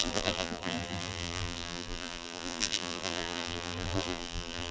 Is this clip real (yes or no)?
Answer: no